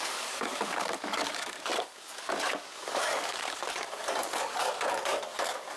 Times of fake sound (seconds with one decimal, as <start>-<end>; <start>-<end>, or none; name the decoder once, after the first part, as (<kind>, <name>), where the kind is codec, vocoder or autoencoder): 0.0-5.8 (codec, DAC)